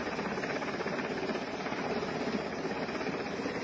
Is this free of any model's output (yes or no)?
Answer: yes